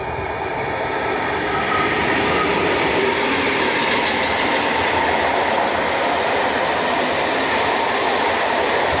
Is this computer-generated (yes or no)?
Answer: no